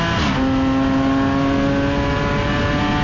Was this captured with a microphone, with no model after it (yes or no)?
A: yes